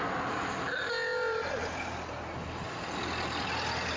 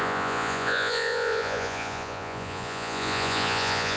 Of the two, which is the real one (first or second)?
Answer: first